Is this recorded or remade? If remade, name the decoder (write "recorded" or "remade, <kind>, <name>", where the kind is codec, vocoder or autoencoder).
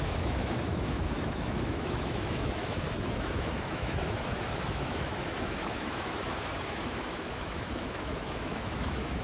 remade, autoencoder, DAC-VAE